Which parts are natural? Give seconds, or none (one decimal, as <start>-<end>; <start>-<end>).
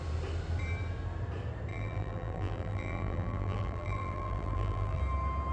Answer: 0.0-1.7; 5.0-5.5